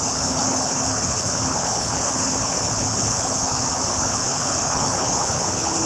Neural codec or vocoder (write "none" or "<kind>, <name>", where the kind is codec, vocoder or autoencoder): codec, HILCodec